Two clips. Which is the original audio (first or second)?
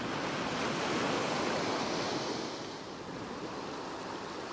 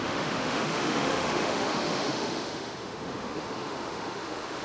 first